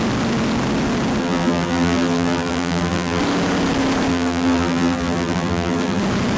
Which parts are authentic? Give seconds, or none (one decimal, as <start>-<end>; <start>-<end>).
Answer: 0.0-1.2; 3.2-4.1; 6.0-6.4